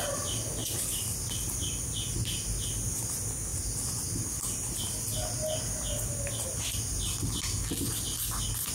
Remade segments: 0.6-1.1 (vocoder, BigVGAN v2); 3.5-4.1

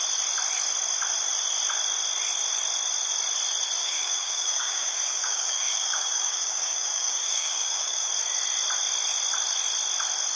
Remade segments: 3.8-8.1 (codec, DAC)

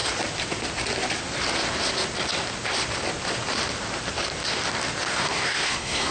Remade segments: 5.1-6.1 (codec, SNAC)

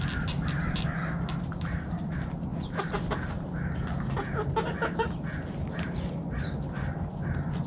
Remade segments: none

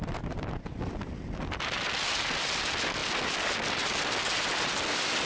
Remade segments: none